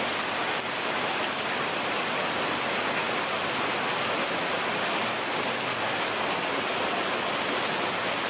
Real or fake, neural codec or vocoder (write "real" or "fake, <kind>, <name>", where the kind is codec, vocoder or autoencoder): real